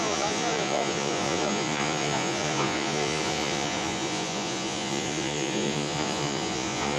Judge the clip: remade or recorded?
remade